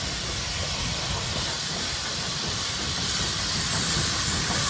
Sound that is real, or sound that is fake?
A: fake